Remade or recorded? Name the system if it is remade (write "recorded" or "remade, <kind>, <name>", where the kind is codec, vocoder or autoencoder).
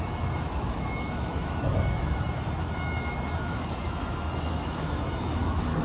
remade, autoencoder, DAC-VAE